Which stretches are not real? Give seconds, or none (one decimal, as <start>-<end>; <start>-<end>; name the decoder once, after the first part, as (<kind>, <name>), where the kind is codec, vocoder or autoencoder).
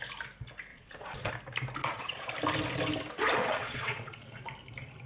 0.7-1.3 (vocoder, Vocos); 1.8-2.3; 3.4-4.4